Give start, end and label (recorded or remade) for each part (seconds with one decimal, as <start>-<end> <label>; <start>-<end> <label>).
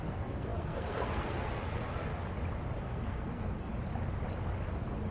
0.0-2.1 remade; 2.1-2.8 recorded; 2.8-3.7 remade; 3.7-5.1 recorded